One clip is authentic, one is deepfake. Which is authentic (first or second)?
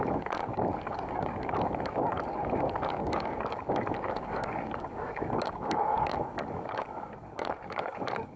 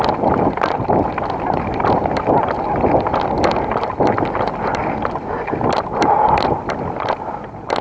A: second